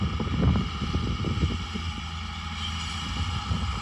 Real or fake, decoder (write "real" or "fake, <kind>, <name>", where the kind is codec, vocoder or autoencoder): real